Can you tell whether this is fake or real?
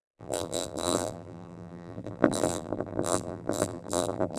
fake